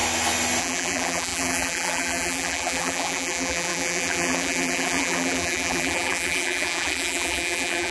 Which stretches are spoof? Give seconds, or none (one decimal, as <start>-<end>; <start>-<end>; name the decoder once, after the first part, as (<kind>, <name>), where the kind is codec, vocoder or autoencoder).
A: 0.6-7.9 (vocoder, BigVGAN v2)